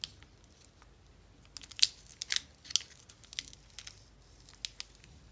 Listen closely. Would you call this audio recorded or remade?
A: recorded